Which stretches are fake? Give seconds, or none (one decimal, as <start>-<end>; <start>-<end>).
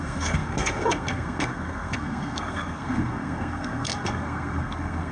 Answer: 0.0-5.1